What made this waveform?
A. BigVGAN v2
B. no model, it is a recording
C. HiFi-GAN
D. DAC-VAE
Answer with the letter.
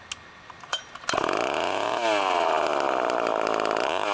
B